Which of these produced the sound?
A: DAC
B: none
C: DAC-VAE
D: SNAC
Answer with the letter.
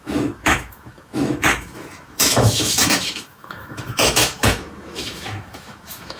C